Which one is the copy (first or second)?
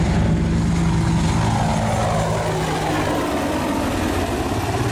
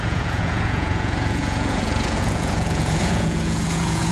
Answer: second